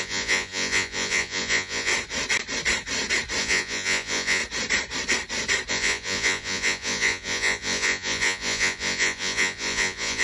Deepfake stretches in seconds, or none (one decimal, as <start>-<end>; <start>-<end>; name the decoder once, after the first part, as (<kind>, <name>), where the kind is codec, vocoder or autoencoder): 0.0-1.9 (vocoder, Vocos); 3.4-4.4; 5.7-10.2